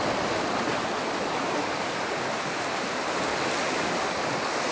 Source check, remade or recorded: recorded